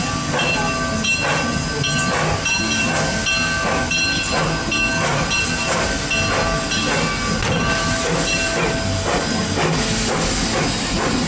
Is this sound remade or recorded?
recorded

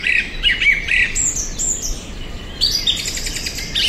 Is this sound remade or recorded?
recorded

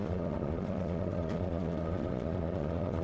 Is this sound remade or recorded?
remade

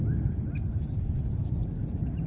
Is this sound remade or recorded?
recorded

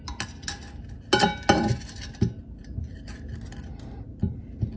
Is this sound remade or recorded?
recorded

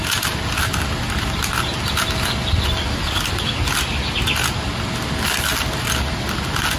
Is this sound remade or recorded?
recorded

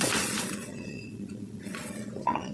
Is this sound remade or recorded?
remade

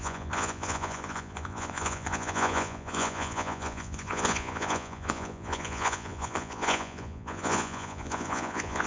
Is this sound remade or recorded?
remade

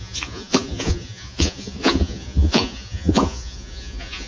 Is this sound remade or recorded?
remade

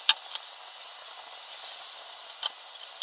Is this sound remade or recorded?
recorded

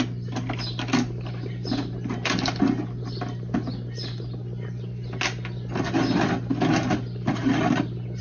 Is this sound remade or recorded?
recorded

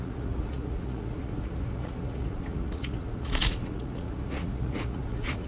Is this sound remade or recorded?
remade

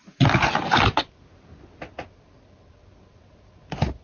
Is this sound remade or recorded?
recorded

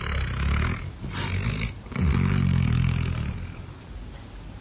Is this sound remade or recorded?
recorded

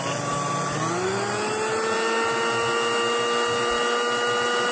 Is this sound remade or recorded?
recorded